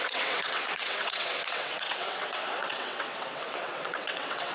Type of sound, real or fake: fake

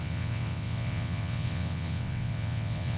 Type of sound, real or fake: fake